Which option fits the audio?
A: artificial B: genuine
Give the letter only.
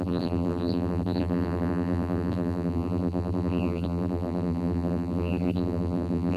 A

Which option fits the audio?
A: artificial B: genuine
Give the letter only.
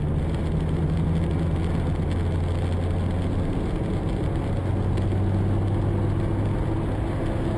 B